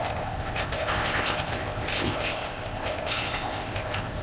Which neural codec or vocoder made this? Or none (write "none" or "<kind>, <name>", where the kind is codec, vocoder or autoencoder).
codec, ZipCodec